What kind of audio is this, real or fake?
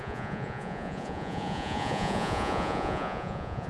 fake